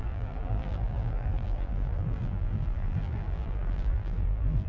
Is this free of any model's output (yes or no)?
no